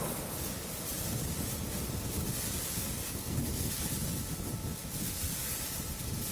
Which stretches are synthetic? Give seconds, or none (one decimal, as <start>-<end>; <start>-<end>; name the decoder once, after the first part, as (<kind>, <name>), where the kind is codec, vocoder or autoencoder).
3.0-3.7 (codec, SNAC)